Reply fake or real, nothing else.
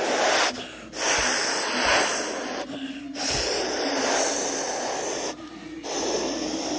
real